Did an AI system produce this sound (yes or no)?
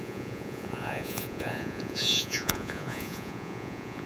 yes